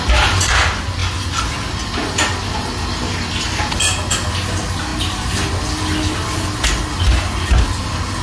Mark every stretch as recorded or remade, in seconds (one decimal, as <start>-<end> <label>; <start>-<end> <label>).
0.0-8.2 recorded